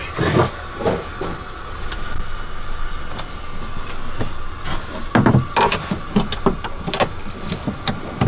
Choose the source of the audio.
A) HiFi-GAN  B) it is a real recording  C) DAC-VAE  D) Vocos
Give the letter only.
B